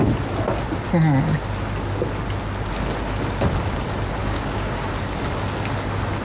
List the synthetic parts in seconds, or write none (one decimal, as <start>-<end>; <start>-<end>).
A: 4.2-4.9